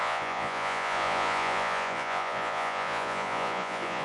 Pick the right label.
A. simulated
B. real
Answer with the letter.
A